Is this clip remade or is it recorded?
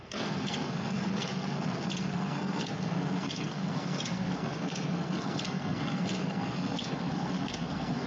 remade